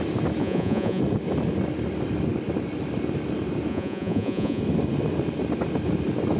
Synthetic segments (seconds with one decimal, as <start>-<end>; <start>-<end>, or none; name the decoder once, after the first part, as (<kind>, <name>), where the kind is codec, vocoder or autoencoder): 0.4-1.0 (vocoder, Vocos); 3.7-4.6